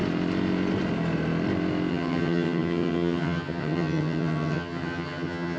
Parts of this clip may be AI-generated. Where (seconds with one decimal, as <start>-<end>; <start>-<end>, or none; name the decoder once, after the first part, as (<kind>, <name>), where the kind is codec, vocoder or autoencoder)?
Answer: 1.9-5.6 (vocoder, HiFi-GAN)